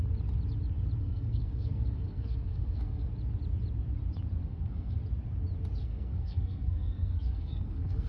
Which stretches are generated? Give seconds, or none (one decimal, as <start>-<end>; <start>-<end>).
1.0-3.1; 4.4-5.0; 5.8-8.1